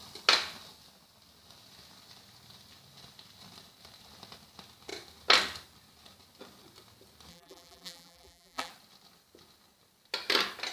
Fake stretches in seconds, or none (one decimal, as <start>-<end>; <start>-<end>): 7.3-8.7